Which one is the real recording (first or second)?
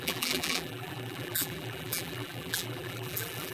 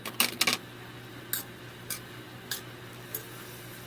second